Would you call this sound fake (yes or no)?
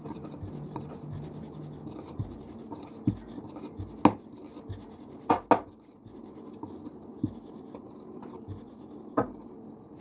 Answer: no